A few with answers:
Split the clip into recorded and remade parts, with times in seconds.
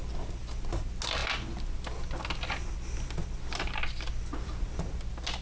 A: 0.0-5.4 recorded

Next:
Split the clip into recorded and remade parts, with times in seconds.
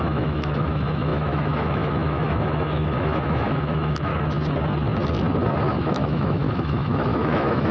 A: 0.0-4.1 remade; 4.1-5.8 recorded; 5.8-7.7 remade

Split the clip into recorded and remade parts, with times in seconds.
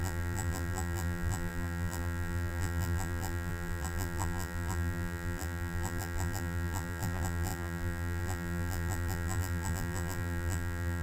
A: 0.0-11.0 remade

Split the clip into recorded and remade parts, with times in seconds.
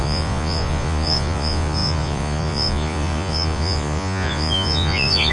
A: 0.0-5.3 remade